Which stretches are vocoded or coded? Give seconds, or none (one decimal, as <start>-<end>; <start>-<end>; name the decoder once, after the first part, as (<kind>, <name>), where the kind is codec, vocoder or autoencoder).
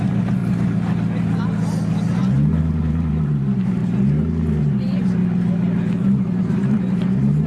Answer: 0.0-0.4 (vocoder, BigVGAN v2); 2.6-3.8; 4.6-5.2; 6.4-7.5